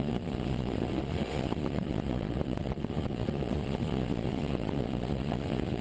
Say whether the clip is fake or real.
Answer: fake